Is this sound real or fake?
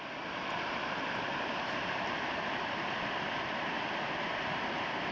real